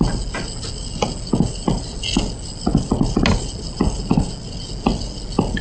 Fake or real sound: real